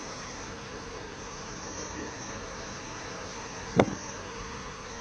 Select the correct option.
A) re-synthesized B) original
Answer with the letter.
A